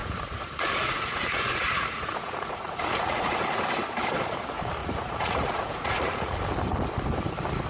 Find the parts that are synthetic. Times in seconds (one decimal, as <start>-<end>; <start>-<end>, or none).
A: 0.0-3.6; 4.8-6.4